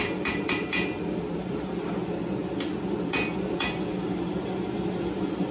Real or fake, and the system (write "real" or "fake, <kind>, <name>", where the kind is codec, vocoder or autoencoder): real